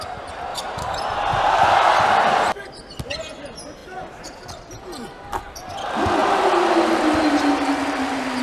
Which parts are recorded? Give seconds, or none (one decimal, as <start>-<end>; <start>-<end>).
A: 0.0-0.5; 2.0-8.4